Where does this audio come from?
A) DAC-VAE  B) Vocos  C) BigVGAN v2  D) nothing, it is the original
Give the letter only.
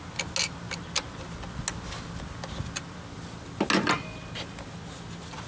D